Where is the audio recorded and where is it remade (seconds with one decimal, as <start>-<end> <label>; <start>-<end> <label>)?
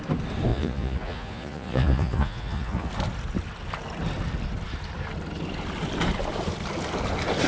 0.0-0.5 recorded; 0.5-2.9 remade; 2.9-7.5 recorded